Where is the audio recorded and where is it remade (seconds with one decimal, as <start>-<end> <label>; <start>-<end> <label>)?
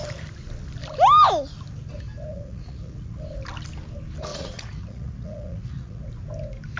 0.0-2.3 recorded; 2.3-3.2 remade; 3.2-4.3 recorded; 4.3-6.0 remade; 6.0-6.8 recorded